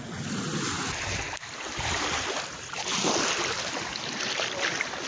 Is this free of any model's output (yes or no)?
yes